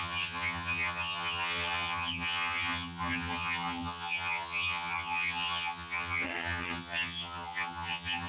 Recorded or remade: remade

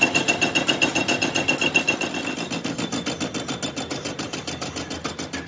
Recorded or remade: recorded